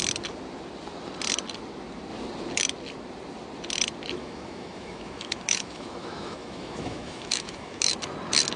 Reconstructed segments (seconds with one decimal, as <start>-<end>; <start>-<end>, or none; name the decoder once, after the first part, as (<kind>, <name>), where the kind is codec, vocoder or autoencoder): 4.2-7.9 (autoencoder, DAC-VAE)